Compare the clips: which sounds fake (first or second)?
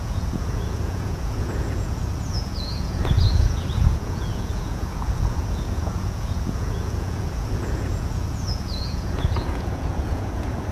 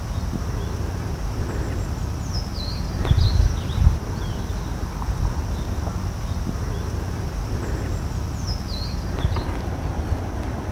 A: first